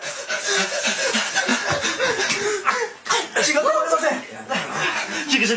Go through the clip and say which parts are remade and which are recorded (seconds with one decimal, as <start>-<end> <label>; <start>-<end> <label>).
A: 0.0-5.6 recorded